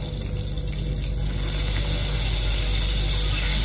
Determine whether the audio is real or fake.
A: real